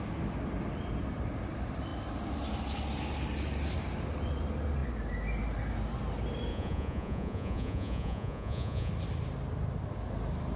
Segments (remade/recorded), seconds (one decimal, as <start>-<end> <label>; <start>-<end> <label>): 0.0-6.5 recorded; 6.5-8.9 remade; 8.9-10.6 recorded

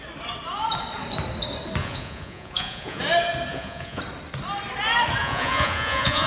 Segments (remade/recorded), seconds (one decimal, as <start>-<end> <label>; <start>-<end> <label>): 0.0-1.8 recorded; 1.8-3.0 remade; 3.0-3.5 recorded; 3.5-4.0 remade; 4.0-5.2 recorded; 5.2-6.3 remade

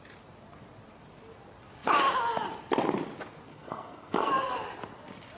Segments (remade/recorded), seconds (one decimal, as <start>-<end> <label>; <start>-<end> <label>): 0.0-3.5 recorded; 3.5-4.3 remade; 4.3-5.4 recorded

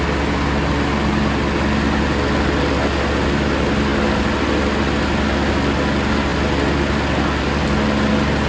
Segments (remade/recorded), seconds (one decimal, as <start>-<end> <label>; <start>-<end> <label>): 0.0-8.5 recorded